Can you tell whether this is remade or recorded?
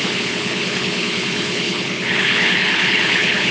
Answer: remade